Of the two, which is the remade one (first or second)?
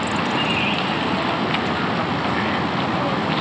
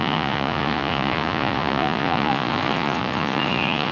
second